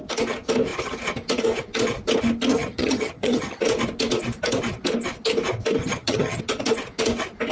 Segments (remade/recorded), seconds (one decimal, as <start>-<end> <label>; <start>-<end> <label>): 0.0-2.5 recorded; 2.5-3.6 remade; 3.6-5.8 recorded; 5.8-6.4 remade; 6.4-7.5 recorded